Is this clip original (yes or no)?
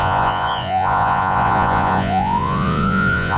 no